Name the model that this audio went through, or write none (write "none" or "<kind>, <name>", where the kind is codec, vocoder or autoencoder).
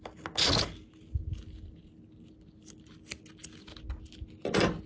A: none